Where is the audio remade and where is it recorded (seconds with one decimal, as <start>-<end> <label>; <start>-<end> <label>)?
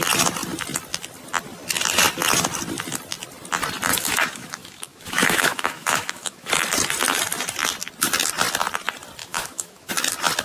0.0-3.9 recorded; 3.9-6.5 remade; 6.5-9.2 recorded; 9.2-9.9 remade; 9.9-10.4 recorded